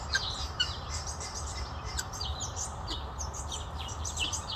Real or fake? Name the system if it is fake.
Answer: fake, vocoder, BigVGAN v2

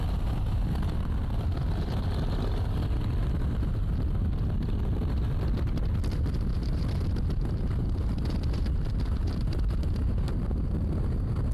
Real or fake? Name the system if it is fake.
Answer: fake, vocoder, BigVGAN v2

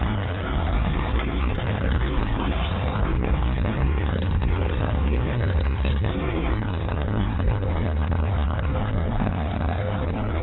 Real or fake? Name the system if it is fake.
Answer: fake, codec, SNAC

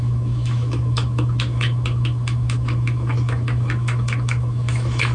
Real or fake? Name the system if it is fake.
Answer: fake, autoencoder, DAC-VAE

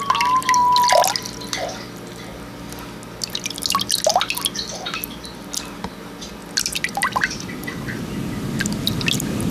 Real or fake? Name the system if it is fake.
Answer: real